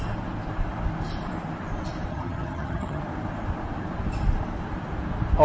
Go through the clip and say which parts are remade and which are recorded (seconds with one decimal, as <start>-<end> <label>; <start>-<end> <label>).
0.0-2.1 recorded; 2.1-3.0 remade; 3.0-5.4 recorded